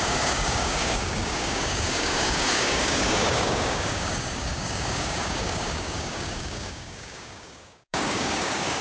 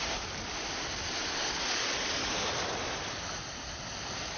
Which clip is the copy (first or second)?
first